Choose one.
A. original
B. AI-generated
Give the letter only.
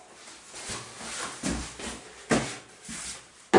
A